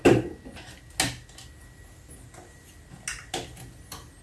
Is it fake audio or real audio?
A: real